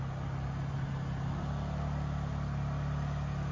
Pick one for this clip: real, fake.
real